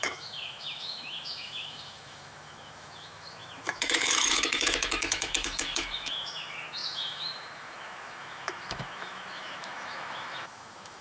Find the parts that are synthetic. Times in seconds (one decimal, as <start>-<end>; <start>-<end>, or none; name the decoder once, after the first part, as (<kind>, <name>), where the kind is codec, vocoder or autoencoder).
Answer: 0.0-11.0 (autoencoder, DAC-VAE)